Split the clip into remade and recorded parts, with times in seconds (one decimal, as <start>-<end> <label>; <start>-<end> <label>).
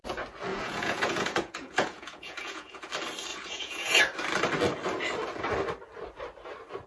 0.0-0.5 recorded; 0.5-2.9 remade; 2.9-3.3 recorded; 3.3-4.0 remade; 4.0-6.9 recorded